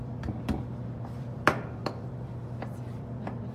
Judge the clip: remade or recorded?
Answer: remade